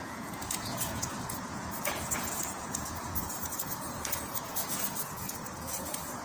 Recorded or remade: remade